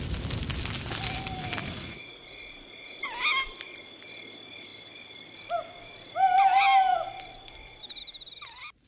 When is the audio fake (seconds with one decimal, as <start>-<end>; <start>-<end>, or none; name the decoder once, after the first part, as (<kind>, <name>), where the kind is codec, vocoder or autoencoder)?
1.6-3.0 (vocoder, Vocos)